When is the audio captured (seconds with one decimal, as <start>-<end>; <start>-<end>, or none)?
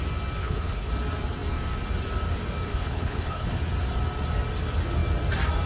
0.0-0.4; 0.9-2.7; 3.6-5.7